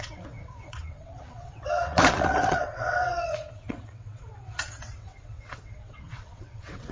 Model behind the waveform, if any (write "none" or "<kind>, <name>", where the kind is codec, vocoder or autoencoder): vocoder, WaveNeXt